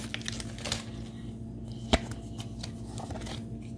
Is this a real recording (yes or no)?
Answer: yes